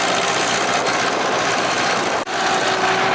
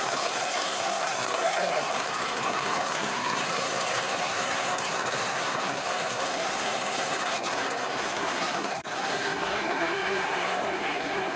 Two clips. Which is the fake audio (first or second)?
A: second